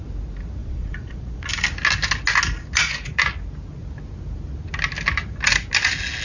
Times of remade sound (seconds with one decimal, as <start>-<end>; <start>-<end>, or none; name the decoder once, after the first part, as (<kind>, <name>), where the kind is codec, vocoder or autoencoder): 0.6-1.5 (vocoder, Vocos)

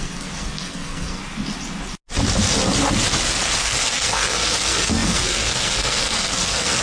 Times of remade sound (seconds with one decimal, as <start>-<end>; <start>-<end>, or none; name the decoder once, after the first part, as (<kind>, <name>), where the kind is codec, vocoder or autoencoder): 0.0-1.2 (codec, SNAC); 3.6-6.8